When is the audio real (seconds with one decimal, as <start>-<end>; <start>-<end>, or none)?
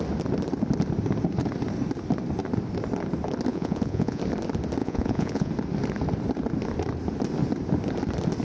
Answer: 0.0-3.5; 4.2-4.8; 5.5-8.4